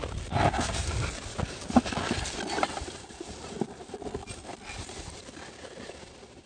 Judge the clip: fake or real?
real